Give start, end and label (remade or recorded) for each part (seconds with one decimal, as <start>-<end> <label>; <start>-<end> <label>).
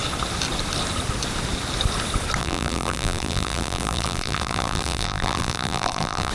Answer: 0.0-2.4 recorded; 2.4-6.3 remade